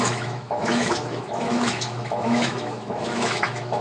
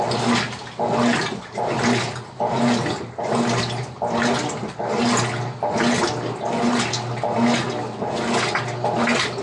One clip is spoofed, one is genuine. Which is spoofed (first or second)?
first